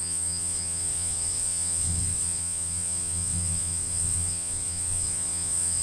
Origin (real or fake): fake